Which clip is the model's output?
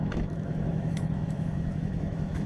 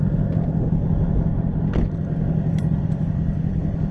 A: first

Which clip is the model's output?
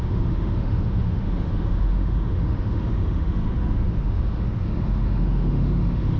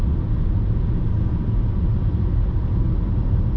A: first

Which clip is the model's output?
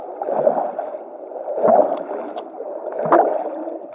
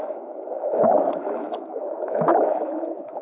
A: second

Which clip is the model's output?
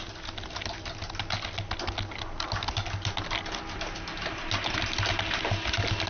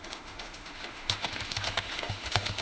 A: second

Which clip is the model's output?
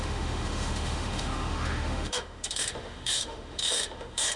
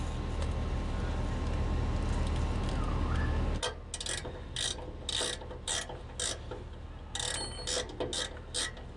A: first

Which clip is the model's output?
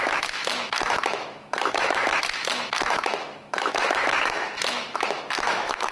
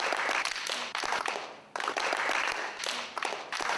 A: first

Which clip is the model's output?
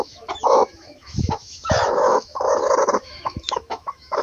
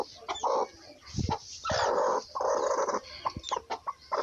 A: first